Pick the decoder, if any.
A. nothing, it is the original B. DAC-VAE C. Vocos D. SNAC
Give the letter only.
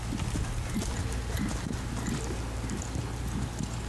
A